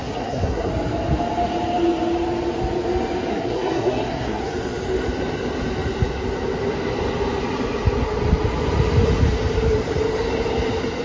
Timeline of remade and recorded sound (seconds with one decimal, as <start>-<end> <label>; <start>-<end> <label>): 0.0-0.7 remade; 0.7-3.3 recorded; 3.3-4.4 remade; 4.4-11.0 recorded

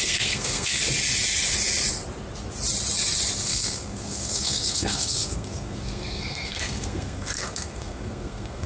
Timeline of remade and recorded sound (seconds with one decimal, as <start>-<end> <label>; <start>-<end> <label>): 0.0-0.8 remade; 0.8-3.4 recorded; 3.4-8.7 remade

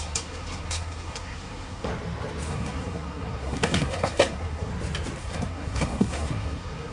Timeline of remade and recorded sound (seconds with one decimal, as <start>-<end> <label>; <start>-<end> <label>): 0.0-1.9 remade; 1.9-2.5 recorded; 2.5-4.7 remade; 4.7-5.2 recorded; 5.2-6.9 remade

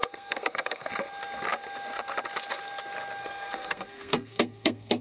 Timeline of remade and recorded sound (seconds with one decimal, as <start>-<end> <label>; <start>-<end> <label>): 0.0-0.9 remade; 0.9-3.2 recorded; 3.2-5.0 remade

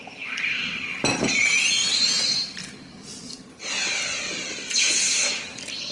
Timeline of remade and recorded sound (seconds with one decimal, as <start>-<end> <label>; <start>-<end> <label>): 0.0-5.9 recorded

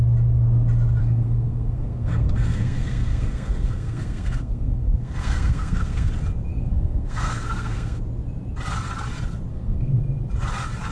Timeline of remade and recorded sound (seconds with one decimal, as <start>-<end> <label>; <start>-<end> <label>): 0.0-1.0 recorded; 1.0-6.1 remade; 6.1-6.5 recorded; 6.5-8.0 remade; 8.0-9.5 recorded; 9.5-10.0 remade; 10.0-10.9 recorded

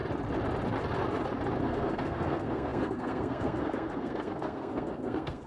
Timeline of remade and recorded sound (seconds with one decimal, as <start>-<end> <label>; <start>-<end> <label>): 0.0-1.6 recorded; 1.6-5.5 remade

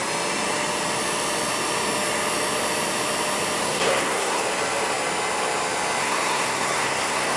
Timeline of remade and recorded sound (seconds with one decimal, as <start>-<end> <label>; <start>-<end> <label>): 0.0-3.6 recorded; 3.6-4.4 remade; 4.4-6.0 recorded; 6.0-7.4 remade